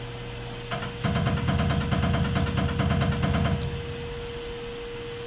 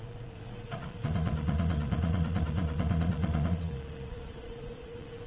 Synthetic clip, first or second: second